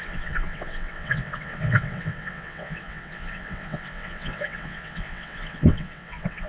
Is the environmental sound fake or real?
fake